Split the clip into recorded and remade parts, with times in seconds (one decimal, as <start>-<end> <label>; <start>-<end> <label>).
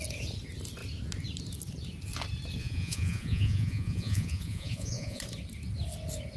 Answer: 0.0-2.6 recorded; 2.6-5.2 remade; 5.2-6.4 recorded